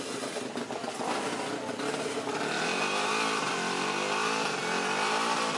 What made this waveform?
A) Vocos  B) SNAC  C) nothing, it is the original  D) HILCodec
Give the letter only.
C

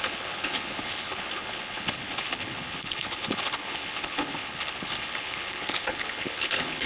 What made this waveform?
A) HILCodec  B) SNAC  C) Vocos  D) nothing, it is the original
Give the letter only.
A